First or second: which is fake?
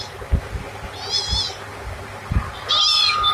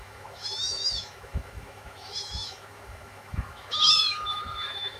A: second